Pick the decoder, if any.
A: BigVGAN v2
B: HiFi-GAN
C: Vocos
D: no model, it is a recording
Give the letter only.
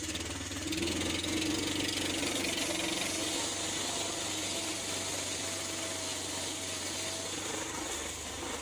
D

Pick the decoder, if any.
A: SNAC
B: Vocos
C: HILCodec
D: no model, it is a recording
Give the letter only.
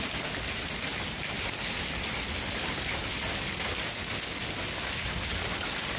D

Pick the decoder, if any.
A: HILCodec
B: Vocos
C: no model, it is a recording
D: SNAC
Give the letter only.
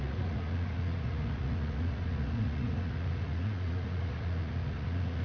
B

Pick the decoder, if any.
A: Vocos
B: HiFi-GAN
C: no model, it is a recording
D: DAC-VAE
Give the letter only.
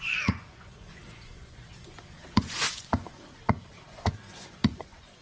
A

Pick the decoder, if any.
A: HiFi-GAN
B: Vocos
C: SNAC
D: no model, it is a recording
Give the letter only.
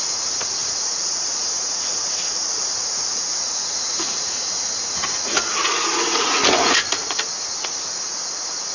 B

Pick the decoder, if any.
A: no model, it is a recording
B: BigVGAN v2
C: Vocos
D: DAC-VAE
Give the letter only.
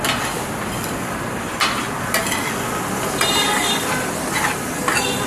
A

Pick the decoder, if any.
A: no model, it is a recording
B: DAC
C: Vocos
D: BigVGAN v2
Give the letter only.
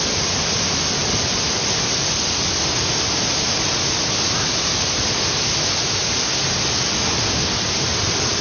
A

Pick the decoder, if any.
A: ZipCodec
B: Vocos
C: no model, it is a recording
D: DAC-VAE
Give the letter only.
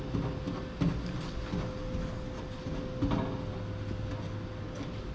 C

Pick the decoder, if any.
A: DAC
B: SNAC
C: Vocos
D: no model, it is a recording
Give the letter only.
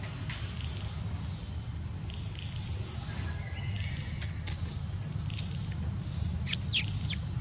D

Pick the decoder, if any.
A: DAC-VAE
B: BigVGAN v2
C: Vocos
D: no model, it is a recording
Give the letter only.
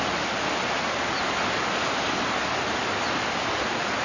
D